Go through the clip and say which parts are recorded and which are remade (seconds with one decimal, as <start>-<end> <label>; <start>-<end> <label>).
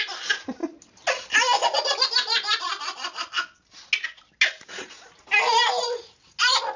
0.0-6.8 recorded